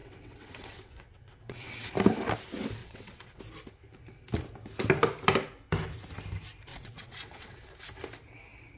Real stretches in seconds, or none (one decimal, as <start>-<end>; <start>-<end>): 1.9-2.8; 3.4-6.7; 7.7-8.8

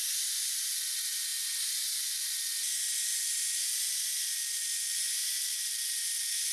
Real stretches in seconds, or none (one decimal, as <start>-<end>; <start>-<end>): 0.0-6.5

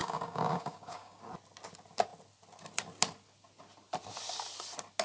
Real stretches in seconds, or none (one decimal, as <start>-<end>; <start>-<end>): 1.2-5.0

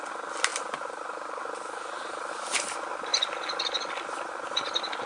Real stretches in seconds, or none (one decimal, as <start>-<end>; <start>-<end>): 0.0-0.5; 2.3-5.1

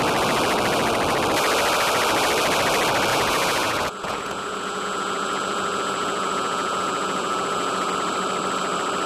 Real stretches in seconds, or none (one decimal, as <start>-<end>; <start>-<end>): 0.0-3.1; 7.9-9.1